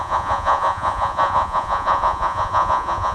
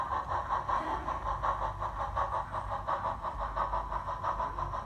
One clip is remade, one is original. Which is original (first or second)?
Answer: second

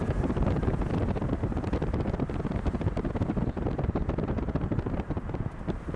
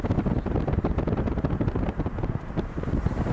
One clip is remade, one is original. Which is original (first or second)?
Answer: second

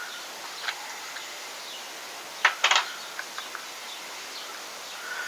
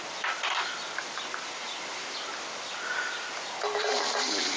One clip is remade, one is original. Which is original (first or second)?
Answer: first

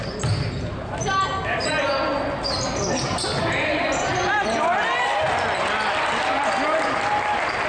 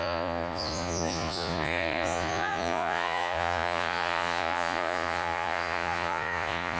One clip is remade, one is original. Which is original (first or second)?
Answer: first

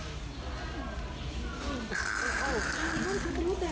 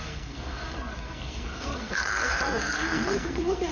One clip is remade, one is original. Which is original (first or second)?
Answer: first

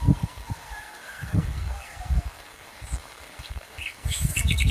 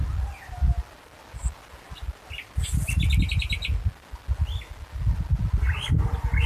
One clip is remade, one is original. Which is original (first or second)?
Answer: second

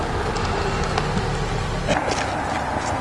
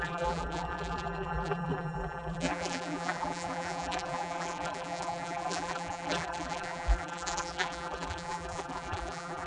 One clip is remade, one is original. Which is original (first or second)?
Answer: first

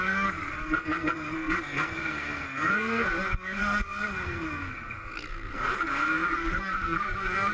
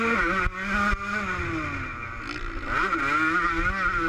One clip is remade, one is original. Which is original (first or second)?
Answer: second